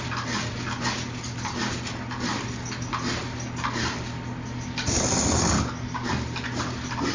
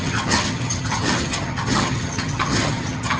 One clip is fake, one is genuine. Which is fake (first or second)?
second